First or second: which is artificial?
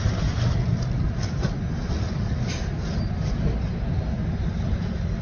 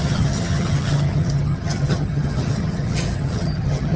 second